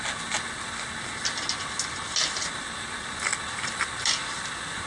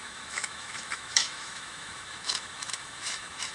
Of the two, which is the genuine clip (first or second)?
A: first